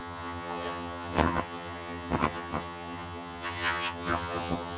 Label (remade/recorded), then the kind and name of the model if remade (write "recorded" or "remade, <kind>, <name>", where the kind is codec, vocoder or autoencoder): remade, vocoder, HiFi-GAN